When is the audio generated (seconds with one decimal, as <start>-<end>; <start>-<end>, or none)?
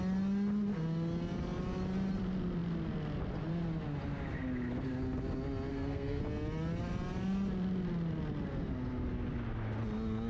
5.7-6.2